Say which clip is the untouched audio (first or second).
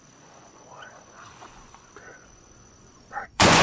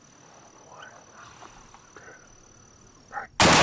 second